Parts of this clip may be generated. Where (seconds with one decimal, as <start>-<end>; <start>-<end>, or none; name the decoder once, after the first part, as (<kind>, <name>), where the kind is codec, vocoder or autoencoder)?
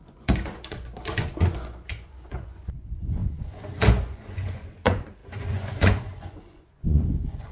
0.0-7.5 (vocoder, Vocos)